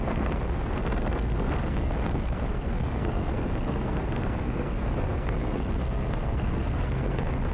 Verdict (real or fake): fake